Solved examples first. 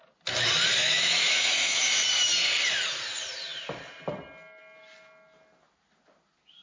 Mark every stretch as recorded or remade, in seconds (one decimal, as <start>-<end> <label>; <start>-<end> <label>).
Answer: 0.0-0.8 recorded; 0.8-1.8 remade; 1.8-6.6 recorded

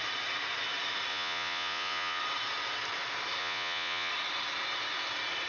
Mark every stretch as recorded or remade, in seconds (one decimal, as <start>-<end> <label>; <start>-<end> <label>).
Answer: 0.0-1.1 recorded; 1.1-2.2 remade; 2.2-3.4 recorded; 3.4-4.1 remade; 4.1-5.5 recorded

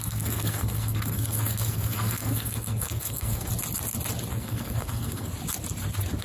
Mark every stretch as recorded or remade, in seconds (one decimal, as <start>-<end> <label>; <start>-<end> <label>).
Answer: 0.0-3.5 remade; 3.5-4.3 recorded; 4.3-5.3 remade; 5.3-6.2 recorded